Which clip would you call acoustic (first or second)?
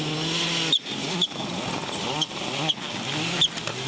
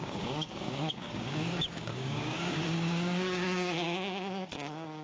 first